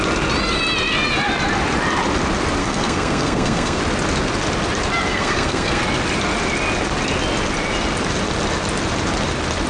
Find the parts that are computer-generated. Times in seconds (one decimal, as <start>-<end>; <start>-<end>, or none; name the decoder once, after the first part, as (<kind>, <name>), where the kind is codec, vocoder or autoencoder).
2.6-3.8 (codec, SNAC); 5.1-5.8